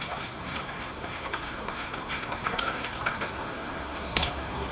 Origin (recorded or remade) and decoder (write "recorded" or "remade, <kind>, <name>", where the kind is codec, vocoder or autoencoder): remade, codec, SNAC